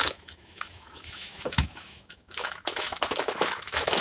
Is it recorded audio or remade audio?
remade